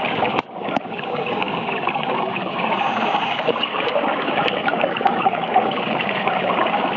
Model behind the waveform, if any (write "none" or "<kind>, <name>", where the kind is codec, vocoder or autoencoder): codec, DAC